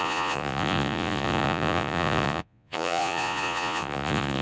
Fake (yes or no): yes